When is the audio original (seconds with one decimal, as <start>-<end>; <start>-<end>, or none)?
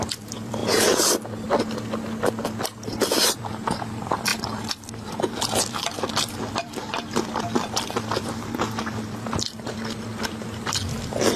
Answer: 0.6-3.2